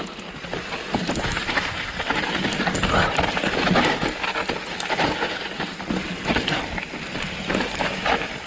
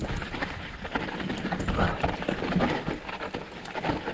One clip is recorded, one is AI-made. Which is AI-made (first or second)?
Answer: second